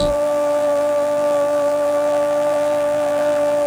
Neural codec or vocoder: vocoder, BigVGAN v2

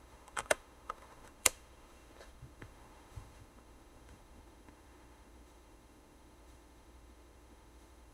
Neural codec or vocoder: autoencoder, DAC-VAE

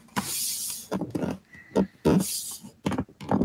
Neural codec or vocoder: none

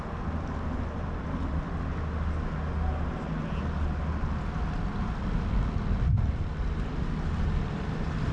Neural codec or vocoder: none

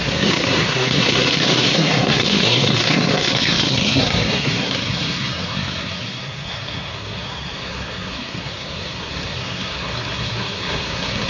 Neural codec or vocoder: codec, SNAC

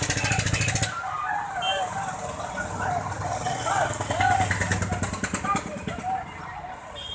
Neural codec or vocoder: none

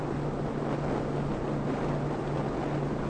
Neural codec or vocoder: none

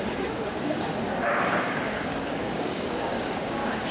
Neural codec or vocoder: codec, DAC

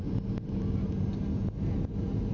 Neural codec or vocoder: none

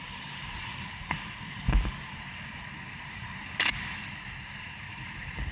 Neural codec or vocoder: none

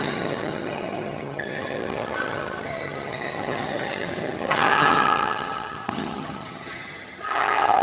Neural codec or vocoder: vocoder, HiFi-GAN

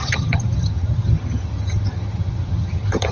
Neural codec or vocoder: vocoder, HiFi-GAN